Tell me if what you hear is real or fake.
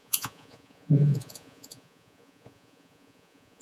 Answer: fake